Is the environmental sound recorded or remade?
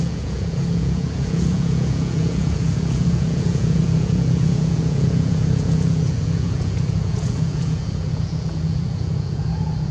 remade